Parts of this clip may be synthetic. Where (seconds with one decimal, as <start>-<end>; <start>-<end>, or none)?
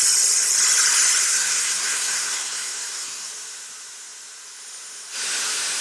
1.2-3.3